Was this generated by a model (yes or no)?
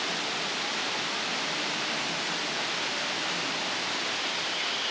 yes